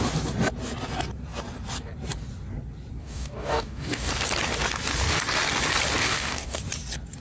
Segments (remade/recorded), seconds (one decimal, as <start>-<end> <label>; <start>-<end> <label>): 0.0-3.0 recorded; 3.0-4.1 remade; 4.1-6.0 recorded; 6.0-6.6 remade; 6.6-7.2 recorded